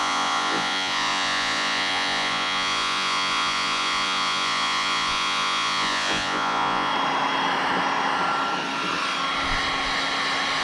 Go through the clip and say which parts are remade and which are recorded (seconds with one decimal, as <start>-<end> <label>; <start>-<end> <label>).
0.0-6.9 remade; 6.9-10.6 recorded